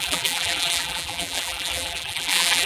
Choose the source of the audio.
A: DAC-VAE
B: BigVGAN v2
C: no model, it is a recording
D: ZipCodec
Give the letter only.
B